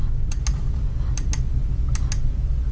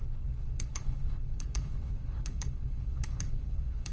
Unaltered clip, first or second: first